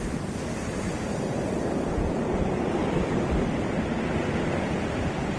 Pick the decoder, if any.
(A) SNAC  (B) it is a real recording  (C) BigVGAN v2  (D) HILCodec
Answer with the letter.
C